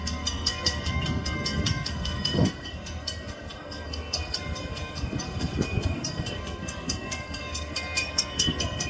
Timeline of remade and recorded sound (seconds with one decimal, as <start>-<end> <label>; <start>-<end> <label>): 0.0-8.9 remade